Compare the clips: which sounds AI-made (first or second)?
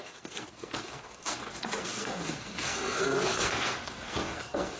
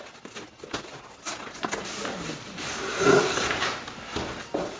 first